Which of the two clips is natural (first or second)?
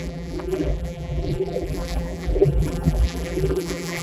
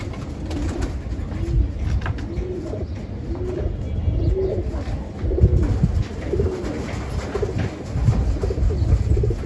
second